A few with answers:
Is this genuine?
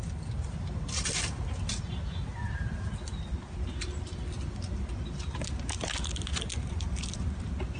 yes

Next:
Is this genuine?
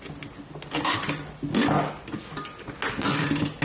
yes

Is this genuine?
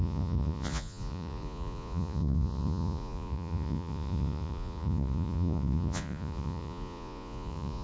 no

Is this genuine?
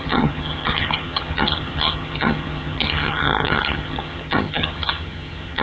no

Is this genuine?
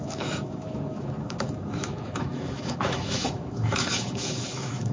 no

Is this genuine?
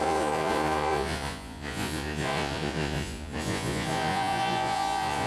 no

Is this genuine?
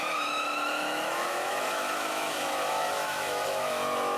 no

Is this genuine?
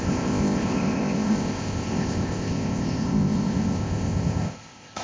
no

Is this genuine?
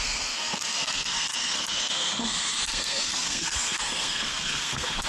no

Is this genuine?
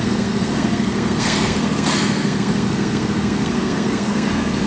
no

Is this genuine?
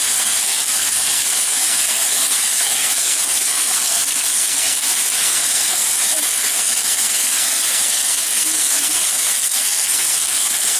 no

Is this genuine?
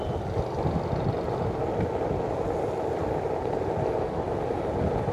yes